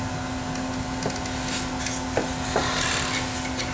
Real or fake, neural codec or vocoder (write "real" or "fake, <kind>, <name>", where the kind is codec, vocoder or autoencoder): real